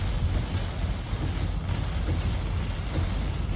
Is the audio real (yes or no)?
yes